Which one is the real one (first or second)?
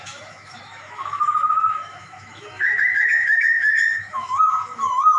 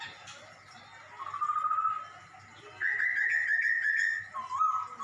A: second